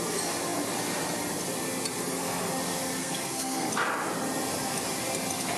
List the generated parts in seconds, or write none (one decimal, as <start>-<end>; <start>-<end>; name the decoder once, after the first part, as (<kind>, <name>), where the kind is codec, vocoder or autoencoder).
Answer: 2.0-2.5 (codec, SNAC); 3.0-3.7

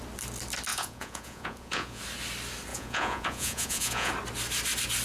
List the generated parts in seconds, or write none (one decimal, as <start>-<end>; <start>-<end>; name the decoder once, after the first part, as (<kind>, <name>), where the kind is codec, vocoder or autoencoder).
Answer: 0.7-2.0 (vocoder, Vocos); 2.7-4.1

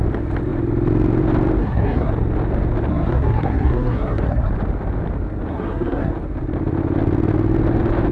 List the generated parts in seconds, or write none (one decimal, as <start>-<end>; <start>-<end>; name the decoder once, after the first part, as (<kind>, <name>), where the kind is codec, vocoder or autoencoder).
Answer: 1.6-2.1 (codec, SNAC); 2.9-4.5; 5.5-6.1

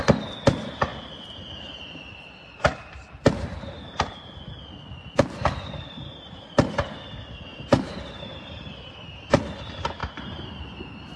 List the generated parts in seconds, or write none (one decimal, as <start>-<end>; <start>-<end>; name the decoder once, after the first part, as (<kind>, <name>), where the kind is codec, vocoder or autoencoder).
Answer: 7.5-9.4 (vocoder, BigVGAN v2); 10.0-10.6

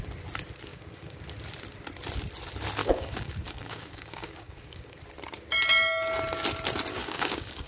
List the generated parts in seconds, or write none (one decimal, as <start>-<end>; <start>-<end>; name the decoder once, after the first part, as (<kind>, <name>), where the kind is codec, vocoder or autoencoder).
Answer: 0.7-1.2 (codec, DAC); 2.8-5.0; 6.9-7.7